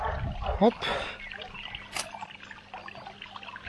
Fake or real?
real